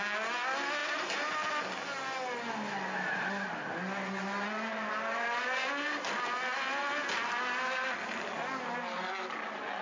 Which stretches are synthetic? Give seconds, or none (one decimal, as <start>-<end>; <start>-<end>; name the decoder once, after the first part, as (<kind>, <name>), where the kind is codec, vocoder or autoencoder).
none